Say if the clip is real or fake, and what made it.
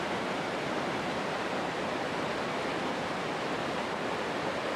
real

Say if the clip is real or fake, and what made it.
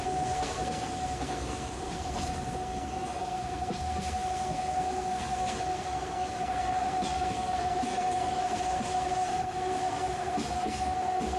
fake, codec, SNAC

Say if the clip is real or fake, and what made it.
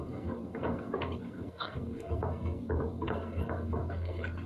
fake, codec, SNAC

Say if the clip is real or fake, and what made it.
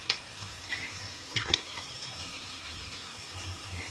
fake, codec, SNAC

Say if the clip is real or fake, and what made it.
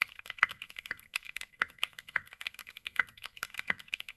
fake, codec, SNAC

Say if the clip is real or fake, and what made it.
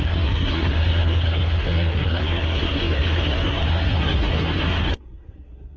fake, codec, SNAC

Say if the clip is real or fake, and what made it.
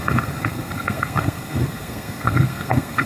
fake, codec, SNAC